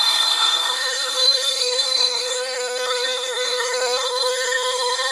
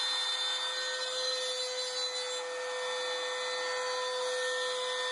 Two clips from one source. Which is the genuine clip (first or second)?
second